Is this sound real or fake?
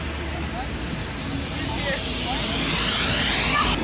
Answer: real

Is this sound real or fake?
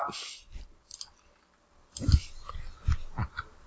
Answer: real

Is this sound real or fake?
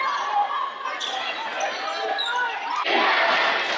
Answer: real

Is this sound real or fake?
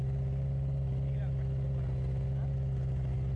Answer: real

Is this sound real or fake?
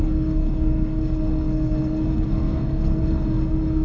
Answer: fake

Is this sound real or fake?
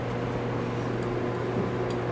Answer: real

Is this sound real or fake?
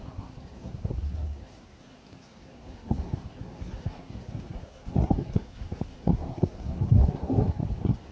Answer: fake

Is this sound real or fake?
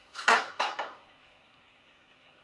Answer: fake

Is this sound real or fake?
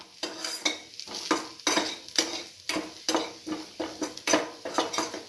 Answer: real